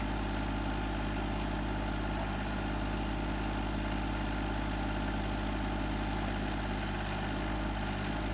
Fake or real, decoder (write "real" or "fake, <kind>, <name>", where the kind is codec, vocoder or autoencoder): real